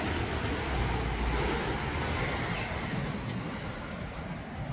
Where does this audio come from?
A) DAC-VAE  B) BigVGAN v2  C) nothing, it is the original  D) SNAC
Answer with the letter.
C